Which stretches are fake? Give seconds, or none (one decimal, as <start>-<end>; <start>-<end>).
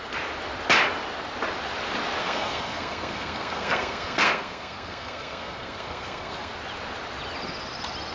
2.2-6.5